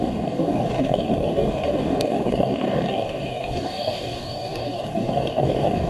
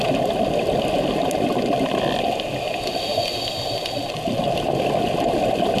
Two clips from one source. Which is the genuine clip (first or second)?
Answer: second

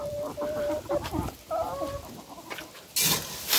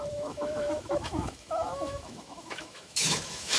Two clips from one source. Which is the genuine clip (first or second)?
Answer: first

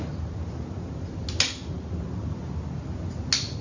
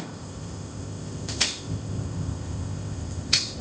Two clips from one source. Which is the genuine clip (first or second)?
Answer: first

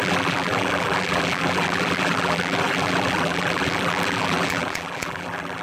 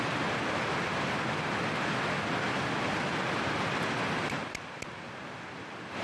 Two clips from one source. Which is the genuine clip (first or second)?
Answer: second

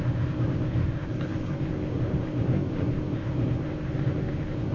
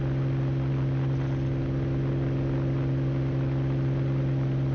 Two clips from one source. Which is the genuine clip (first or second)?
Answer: second